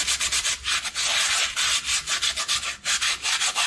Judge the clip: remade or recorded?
recorded